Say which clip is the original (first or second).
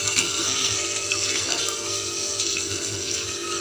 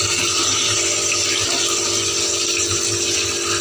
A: second